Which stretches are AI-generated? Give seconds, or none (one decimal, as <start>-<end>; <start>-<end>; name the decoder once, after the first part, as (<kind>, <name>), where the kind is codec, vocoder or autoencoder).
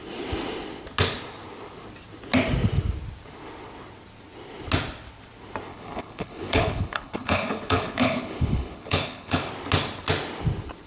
5.7-9.5 (codec, HILCodec)